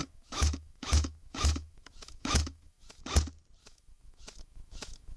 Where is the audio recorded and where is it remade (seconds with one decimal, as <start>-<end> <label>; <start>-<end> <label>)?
0.0-3.0 remade; 3.0-3.6 recorded; 3.6-5.2 remade